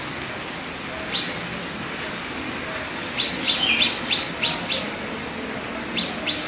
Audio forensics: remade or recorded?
recorded